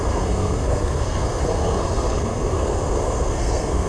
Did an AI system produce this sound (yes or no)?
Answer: yes